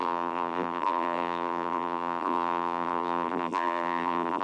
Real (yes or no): no